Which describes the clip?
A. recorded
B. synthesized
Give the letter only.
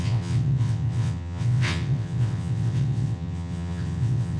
B